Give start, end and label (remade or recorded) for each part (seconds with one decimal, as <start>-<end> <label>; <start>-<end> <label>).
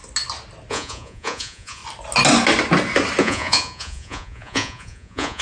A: 0.0-0.7 recorded; 0.7-1.8 remade; 1.8-3.2 recorded; 3.2-5.4 remade